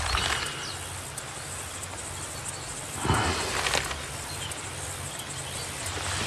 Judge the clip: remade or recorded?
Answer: recorded